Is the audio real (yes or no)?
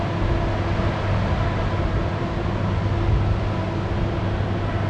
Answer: yes